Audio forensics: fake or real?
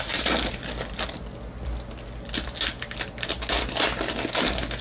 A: real